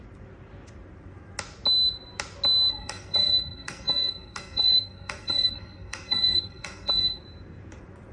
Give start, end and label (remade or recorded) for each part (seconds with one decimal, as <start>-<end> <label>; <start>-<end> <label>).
0.0-2.7 recorded; 2.7-7.2 remade; 7.2-8.1 recorded